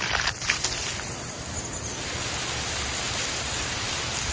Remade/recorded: recorded